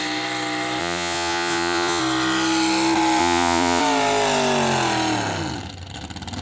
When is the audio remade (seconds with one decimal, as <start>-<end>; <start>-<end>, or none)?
0.8-2.0; 3.2-3.8